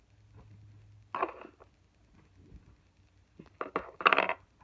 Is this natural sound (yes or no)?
yes